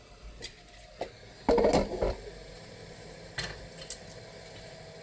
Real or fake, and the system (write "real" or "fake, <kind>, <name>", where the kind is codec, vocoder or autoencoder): real